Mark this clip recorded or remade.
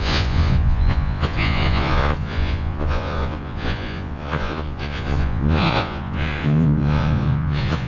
remade